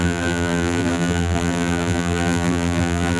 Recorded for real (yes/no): no